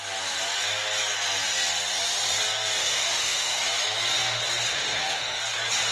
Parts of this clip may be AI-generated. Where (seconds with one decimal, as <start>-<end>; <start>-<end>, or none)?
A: 2.8-3.6; 4.7-5.4